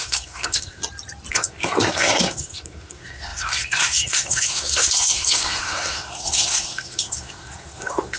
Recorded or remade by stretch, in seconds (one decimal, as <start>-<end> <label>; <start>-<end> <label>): 0.0-0.8 remade; 0.8-1.3 recorded; 1.3-8.2 remade